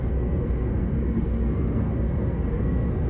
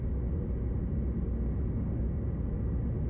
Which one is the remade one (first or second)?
first